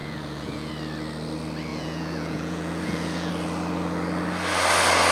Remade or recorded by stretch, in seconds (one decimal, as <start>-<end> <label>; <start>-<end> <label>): 0.0-0.7 remade; 0.7-1.7 recorded; 1.7-3.3 remade; 3.3-5.1 recorded